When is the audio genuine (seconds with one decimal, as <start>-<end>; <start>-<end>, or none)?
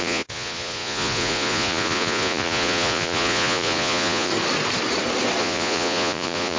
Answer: 4.3-5.4